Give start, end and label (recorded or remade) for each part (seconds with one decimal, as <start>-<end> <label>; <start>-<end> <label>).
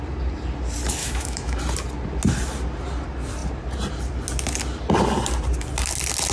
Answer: 0.0-1.0 recorded; 1.0-1.6 remade; 1.6-6.3 recorded